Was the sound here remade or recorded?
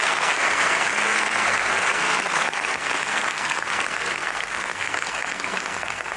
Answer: remade